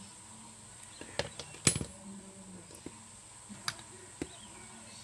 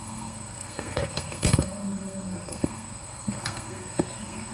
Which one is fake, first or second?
second